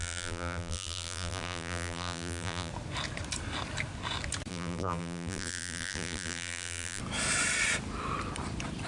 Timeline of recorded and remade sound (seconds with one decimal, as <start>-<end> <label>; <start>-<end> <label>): 0.0-2.7 remade; 2.7-4.5 recorded; 4.5-7.0 remade; 7.0-8.9 recorded